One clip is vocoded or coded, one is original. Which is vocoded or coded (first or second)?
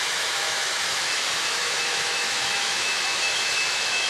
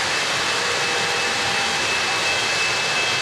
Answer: first